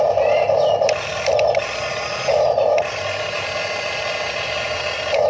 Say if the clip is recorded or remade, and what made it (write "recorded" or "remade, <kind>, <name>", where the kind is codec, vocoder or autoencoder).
remade, vocoder, BigVGAN v2